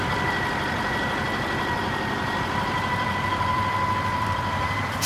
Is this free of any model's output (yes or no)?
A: no